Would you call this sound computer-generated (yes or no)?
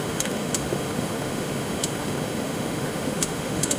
yes